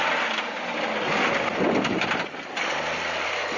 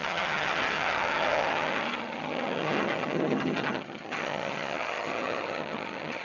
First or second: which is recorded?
first